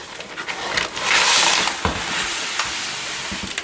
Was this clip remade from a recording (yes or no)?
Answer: no